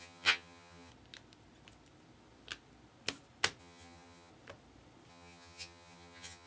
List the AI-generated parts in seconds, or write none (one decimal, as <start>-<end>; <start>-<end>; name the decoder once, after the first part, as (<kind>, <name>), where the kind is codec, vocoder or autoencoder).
0.0-0.9 (vocoder, HiFi-GAN); 3.6-4.3; 5.1-6.5